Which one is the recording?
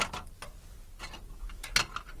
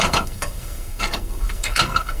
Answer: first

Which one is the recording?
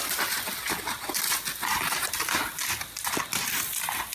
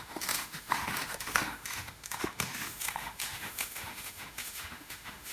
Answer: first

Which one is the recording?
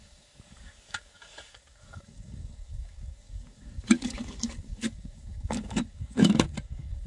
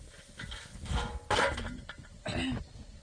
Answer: second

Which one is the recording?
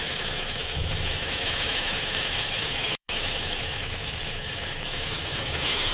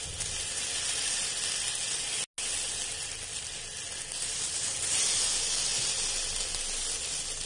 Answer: second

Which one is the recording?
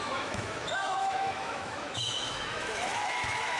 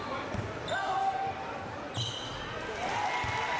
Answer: second